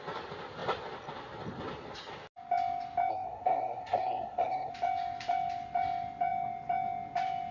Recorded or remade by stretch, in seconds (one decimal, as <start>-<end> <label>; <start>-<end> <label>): 0.0-3.1 recorded; 3.1-4.7 remade; 4.7-7.5 recorded